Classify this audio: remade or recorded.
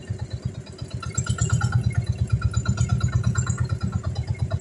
recorded